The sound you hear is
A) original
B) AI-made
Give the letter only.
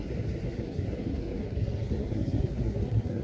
B